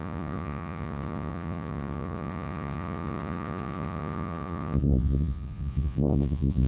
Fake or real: fake